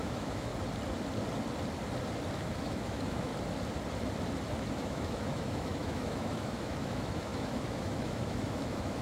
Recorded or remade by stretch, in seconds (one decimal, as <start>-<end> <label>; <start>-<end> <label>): 0.0-0.5 remade; 0.5-2.6 recorded; 2.6-3.3 remade; 3.3-4.7 recorded; 4.7-9.0 remade